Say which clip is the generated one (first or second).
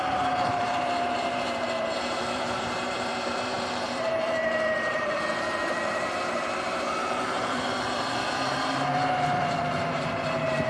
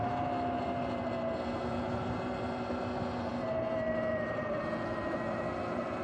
first